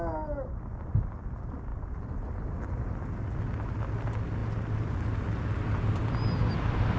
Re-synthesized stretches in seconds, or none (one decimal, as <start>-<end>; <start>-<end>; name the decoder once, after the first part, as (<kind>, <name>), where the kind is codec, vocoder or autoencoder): none